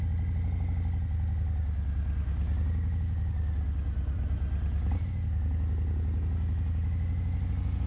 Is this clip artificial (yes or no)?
no